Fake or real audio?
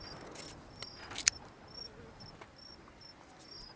real